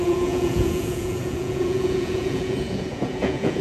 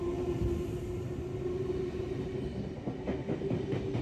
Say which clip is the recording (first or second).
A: second